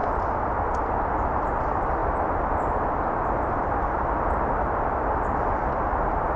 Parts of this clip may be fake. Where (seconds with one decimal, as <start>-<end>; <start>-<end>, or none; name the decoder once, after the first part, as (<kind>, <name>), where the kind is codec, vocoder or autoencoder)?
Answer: none